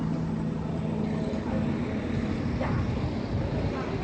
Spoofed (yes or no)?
no